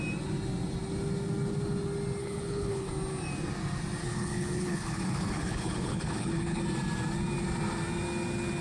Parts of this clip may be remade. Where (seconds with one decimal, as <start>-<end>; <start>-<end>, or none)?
2.2-2.9; 4.0-6.6